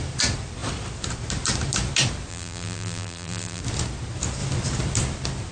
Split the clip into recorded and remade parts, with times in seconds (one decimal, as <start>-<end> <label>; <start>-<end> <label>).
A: 0.0-2.3 recorded; 2.3-3.6 remade; 3.6-5.5 recorded